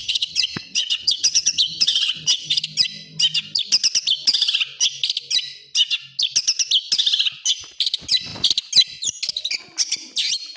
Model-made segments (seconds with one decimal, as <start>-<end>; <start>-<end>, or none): 0.0-2.6